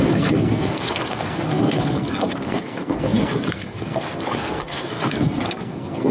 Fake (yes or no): yes